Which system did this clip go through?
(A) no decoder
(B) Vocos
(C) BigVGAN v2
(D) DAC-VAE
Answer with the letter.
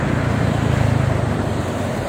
A